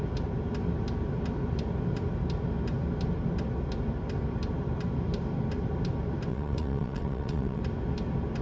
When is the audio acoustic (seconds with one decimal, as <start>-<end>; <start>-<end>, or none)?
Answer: 0.0-6.3; 7.6-8.4